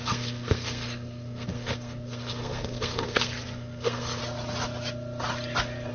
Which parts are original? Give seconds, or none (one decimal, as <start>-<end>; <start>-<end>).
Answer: 4.2-5.9